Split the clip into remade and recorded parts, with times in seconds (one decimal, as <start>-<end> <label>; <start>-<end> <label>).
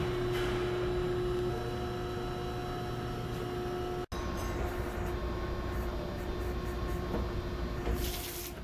0.0-8.6 recorded